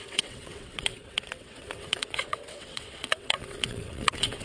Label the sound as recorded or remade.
remade